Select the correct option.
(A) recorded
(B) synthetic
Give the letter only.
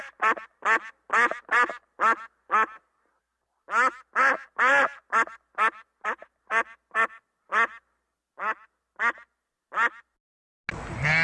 A